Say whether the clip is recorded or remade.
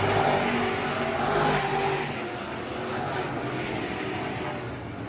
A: recorded